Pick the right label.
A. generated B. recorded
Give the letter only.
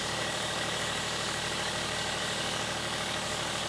A